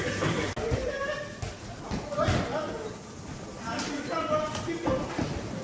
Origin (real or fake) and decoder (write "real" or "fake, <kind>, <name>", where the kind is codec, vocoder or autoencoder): real